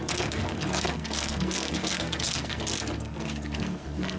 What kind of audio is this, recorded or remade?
remade